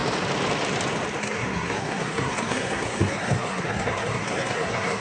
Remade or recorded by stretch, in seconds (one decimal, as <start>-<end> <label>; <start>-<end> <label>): 0.0-1.2 recorded; 1.2-5.0 remade